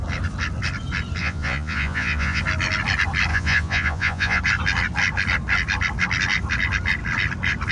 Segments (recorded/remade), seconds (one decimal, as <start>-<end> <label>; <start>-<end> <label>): 0.0-1.2 recorded; 1.2-2.4 remade; 2.4-3.3 recorded; 3.3-4.4 remade; 4.4-7.7 recorded